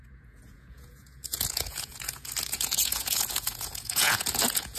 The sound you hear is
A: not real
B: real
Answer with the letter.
A